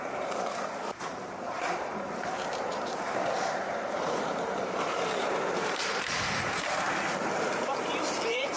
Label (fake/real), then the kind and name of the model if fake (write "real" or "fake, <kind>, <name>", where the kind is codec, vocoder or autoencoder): fake, vocoder, BigVGAN v2